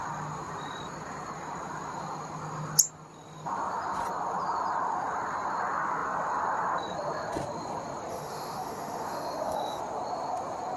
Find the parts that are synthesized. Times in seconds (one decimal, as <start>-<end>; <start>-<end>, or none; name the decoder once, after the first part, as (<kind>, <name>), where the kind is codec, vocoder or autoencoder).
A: 8.1-9.8 (autoencoder, DAC-VAE)